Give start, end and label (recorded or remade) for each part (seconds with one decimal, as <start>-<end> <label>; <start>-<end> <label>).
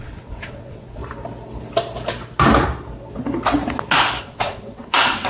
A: 0.0-1.0 remade; 1.0-4.2 recorded; 4.2-5.3 remade